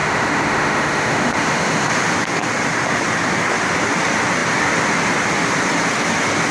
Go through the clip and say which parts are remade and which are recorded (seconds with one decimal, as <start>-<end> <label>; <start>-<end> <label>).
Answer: 0.0-1.9 remade; 1.9-6.5 recorded